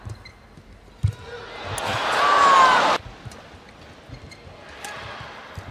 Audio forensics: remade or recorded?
recorded